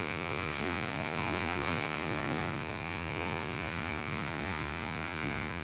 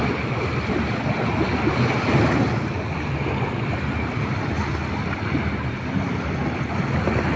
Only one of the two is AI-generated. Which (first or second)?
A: first